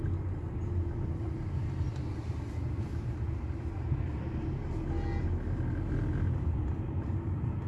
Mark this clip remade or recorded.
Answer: recorded